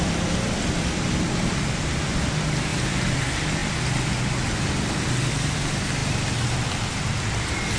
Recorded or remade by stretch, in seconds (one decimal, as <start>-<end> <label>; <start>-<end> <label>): 0.0-7.8 recorded

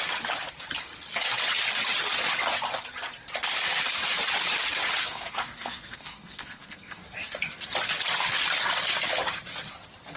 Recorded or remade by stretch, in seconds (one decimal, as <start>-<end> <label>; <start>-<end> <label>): 0.0-5.0 recorded; 5.0-7.0 remade; 7.0-10.2 recorded